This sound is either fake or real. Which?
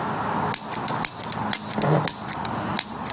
real